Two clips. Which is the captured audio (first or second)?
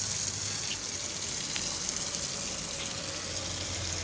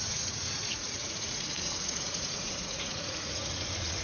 first